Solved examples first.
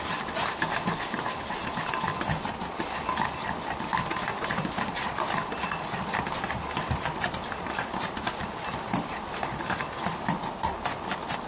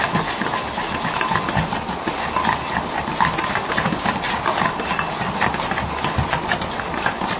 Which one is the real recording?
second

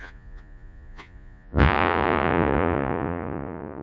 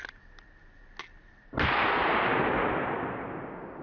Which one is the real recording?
second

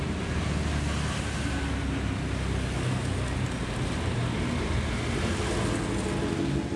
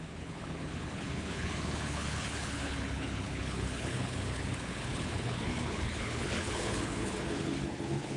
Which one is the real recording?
first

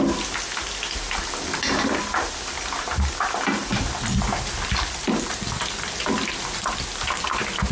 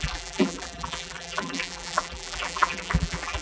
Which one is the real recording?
first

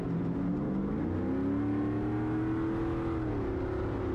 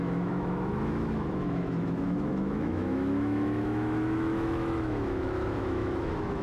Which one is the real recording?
first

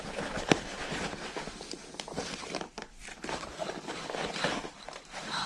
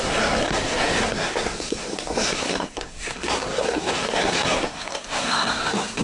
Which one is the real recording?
first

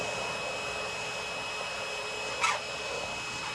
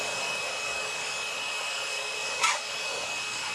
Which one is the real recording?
first